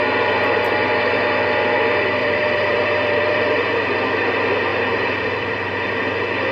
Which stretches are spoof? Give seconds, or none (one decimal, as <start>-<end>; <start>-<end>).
2.2-3.8; 4.7-6.0